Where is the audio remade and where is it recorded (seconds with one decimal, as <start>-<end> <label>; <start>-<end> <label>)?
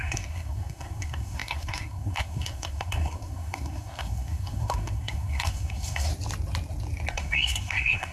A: 0.0-6.1 remade; 6.1-7.1 recorded; 7.1-8.1 remade